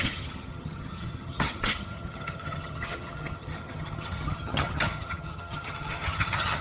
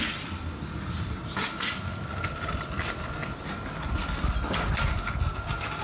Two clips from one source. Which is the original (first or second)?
second